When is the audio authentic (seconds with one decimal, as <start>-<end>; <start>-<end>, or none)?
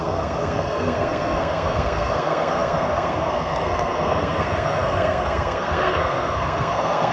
none